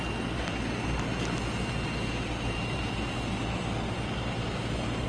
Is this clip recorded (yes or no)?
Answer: yes